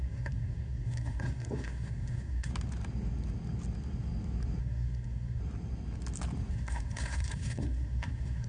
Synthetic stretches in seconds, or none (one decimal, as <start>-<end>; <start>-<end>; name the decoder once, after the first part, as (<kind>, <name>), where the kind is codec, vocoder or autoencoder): 0.0-2.5 (codec, SNAC); 4.6-5.4; 6.5-8.5